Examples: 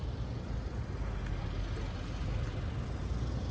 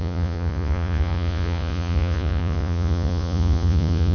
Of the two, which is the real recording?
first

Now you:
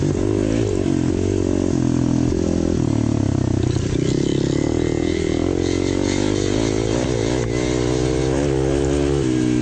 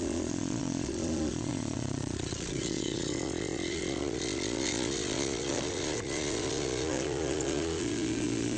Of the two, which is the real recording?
first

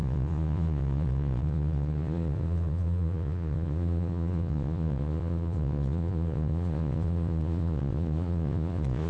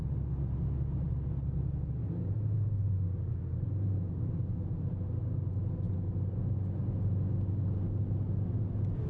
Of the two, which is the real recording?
second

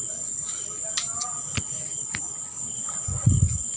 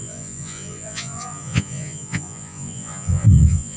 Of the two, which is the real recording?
first